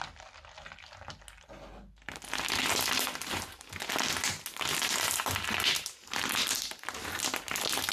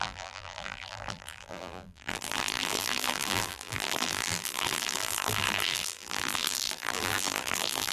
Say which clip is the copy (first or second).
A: second